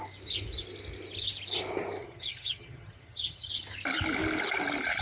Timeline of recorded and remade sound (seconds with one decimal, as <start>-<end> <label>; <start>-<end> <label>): 0.0-2.0 recorded; 2.0-3.5 remade; 3.5-5.0 recorded